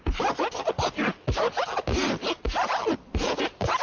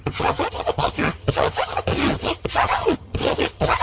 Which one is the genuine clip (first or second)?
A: first